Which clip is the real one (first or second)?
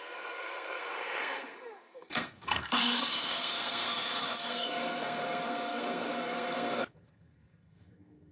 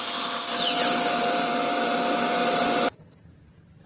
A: second